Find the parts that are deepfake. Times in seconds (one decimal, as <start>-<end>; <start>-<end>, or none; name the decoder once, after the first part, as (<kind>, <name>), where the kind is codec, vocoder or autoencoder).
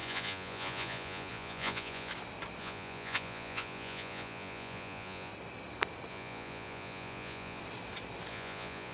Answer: 0.0-2.1 (vocoder, Vocos); 2.6-5.3; 6.1-7.6; 8.3-8.9